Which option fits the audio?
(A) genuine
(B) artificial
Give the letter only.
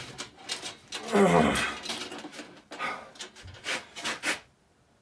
A